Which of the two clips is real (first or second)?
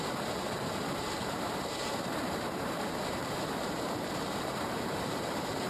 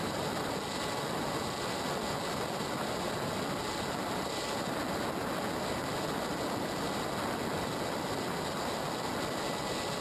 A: second